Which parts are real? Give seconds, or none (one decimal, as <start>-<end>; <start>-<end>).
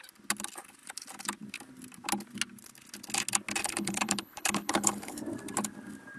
0.0-3.6; 5.2-6.2